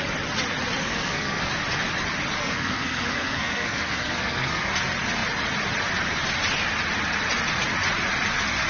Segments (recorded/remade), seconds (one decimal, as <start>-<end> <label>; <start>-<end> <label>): 0.0-0.8 recorded; 0.8-1.5 remade; 1.5-2.4 recorded; 2.4-4.7 remade; 4.7-8.7 recorded